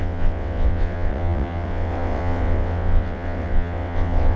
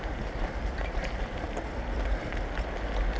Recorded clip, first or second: second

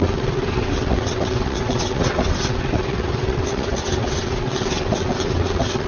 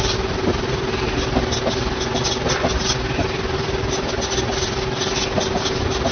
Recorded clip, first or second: second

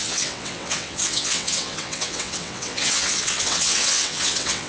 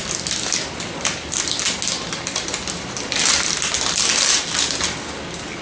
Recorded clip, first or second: second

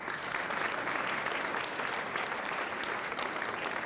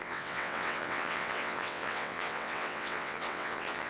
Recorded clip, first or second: first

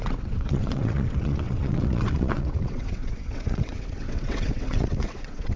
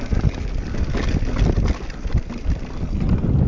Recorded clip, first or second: second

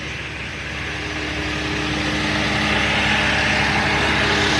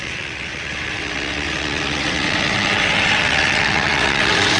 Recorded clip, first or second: first